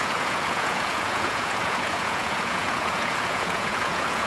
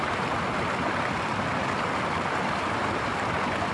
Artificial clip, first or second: first